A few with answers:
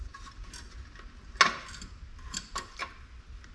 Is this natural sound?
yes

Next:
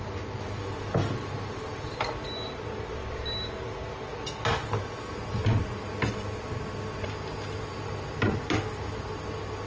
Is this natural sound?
yes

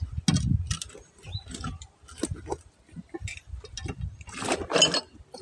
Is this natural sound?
yes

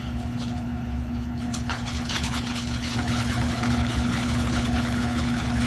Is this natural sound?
no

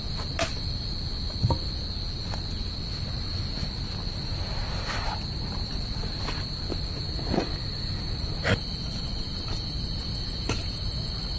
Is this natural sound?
yes